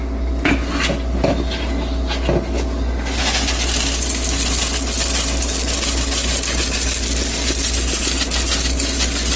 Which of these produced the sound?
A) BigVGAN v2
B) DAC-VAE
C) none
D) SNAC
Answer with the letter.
C